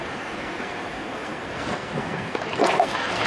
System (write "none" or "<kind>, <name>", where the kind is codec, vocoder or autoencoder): codec, SNAC